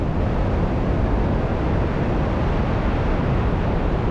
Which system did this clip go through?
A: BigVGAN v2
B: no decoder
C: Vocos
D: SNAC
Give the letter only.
B